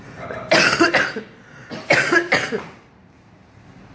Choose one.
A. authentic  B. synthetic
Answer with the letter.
A